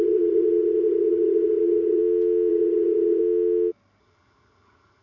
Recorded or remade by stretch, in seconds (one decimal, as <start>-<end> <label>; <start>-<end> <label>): 0.0-2.0 remade; 2.0-2.5 recorded; 2.5-3.2 remade; 3.2-4.0 recorded; 4.0-5.0 remade